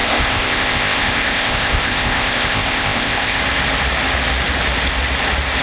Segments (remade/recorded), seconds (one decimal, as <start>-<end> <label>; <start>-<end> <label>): 0.0-3.4 remade; 3.4-5.6 recorded

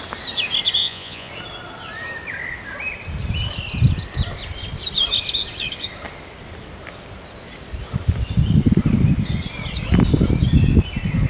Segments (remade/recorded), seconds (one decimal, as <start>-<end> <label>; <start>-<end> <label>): 0.0-0.8 recorded; 0.8-1.3 remade; 1.3-11.3 recorded